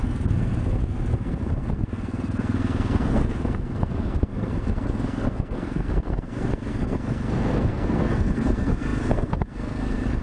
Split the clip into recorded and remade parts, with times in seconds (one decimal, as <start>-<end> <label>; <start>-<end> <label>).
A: 0.0-10.2 remade